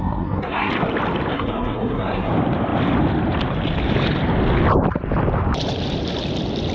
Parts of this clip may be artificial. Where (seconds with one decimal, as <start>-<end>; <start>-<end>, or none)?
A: 0.0-0.7; 1.3-2.3